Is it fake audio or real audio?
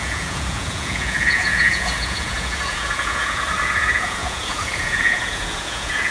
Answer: fake